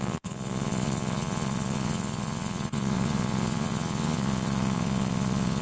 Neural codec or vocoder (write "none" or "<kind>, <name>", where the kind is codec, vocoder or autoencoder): vocoder, Vocos